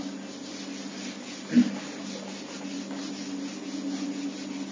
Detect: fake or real real